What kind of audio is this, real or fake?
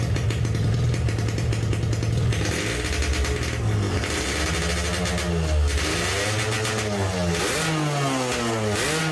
real